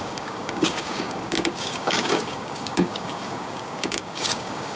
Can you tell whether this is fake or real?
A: fake